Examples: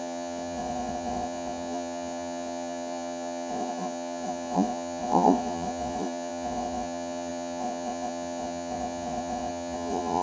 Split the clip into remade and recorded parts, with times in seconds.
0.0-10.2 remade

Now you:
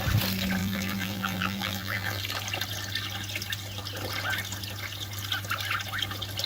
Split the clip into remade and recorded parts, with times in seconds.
0.0-0.6 recorded; 0.6-2.2 remade; 2.2-6.5 recorded